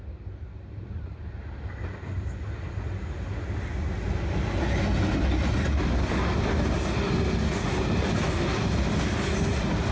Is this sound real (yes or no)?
yes